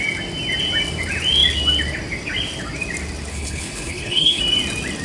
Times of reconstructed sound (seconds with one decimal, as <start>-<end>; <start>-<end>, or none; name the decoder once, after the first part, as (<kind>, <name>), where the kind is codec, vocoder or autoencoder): 3.3-4.4 (codec, HILCodec)